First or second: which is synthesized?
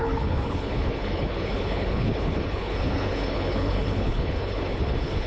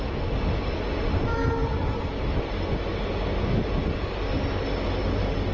first